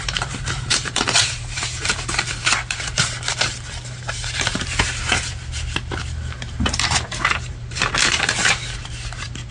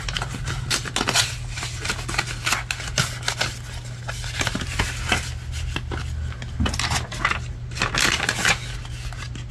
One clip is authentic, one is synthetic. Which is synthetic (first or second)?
first